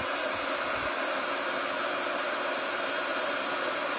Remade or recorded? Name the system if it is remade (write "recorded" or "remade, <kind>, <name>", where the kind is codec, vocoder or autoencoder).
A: recorded